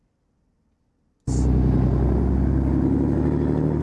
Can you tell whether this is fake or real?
real